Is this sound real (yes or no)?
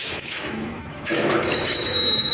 no